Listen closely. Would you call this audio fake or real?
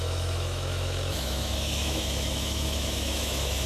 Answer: fake